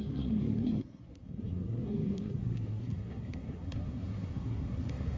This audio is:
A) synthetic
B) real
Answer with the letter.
A